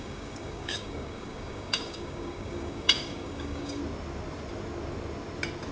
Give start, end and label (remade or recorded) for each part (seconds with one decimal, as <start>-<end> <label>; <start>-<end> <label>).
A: 0.0-3.8 remade; 3.8-5.7 recorded